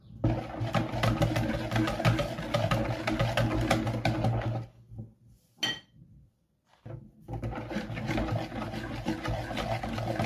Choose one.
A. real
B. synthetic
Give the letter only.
A